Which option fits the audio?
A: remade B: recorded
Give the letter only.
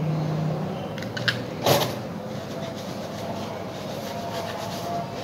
B